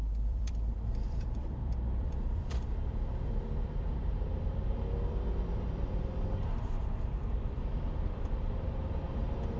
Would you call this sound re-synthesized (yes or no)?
yes